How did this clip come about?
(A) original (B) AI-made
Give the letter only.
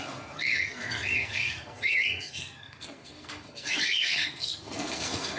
B